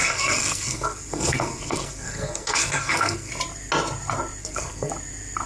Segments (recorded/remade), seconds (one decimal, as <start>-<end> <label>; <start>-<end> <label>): 0.0-3.3 remade; 3.3-4.4 recorded; 4.4-4.9 remade; 4.9-5.5 recorded